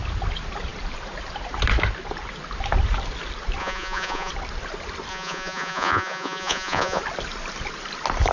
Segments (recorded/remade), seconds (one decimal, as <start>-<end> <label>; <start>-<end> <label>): 0.0-3.6 recorded; 3.6-4.3 remade; 4.3-5.1 recorded; 5.1-7.0 remade; 7.0-8.3 recorded